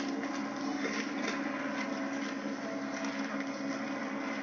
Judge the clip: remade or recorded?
recorded